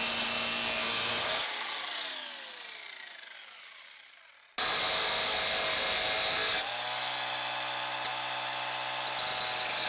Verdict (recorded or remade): recorded